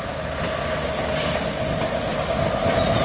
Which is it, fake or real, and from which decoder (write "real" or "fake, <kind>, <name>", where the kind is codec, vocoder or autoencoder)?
real